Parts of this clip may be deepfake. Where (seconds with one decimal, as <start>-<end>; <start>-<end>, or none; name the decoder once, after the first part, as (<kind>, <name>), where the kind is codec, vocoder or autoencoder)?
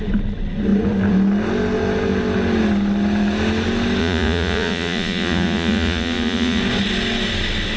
4.0-6.6 (vocoder, Vocos)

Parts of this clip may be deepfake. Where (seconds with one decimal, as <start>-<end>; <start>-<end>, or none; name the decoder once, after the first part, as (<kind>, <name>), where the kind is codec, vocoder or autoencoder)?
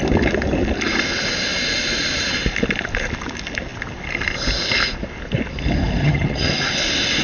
6.0-6.5 (vocoder, HiFi-GAN)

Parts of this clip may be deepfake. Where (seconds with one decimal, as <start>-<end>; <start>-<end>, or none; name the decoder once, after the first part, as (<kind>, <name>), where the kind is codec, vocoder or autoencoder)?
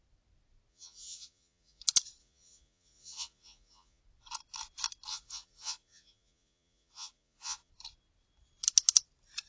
0.7-1.8 (vocoder, Vocos); 2.2-4.0; 5.1-7.7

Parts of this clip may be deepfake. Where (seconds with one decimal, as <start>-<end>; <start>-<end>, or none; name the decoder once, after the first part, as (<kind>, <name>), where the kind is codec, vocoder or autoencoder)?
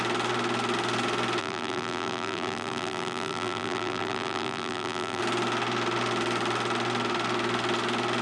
1.4-5.2 (vocoder, BigVGAN v2)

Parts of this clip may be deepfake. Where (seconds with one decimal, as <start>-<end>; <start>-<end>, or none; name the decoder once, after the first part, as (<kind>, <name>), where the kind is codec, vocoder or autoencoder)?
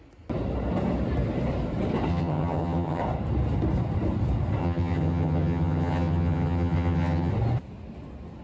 2.1-3.0 (vocoder, HiFi-GAN); 4.6-7.3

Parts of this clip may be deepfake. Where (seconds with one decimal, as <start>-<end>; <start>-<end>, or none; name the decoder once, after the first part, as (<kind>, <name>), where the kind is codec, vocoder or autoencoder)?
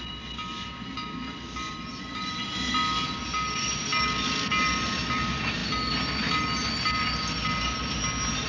none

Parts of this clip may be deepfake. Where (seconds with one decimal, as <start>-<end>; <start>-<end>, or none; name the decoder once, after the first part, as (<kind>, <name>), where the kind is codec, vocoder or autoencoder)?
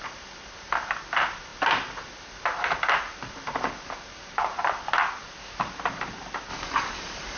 6.5-7.4 (codec, DAC)